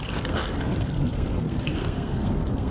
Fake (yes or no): yes